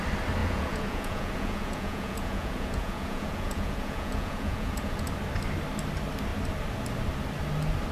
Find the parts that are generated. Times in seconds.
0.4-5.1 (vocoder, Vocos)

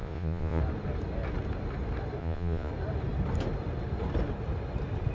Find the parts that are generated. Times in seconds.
0.0-0.6 (vocoder, Vocos); 2.2-2.7